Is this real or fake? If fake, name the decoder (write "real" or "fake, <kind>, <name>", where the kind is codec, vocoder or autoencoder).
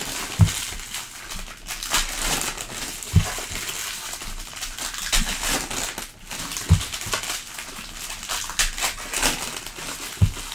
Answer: real